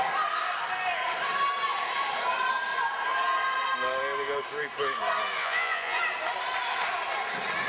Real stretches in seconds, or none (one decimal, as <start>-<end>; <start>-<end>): 0.0-5.4; 6.0-7.7